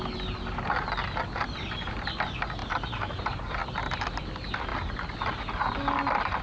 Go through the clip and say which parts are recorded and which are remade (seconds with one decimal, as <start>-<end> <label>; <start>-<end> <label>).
0.0-6.4 recorded